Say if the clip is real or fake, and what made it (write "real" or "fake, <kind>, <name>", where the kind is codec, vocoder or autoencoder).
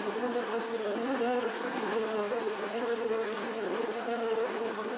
fake, codec, SNAC